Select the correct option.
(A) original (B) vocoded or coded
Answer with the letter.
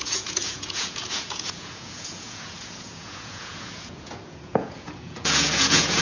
B